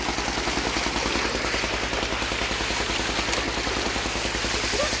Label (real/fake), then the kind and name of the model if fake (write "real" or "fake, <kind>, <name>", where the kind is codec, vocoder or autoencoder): real